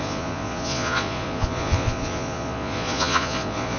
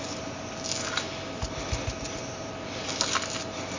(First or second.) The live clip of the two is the second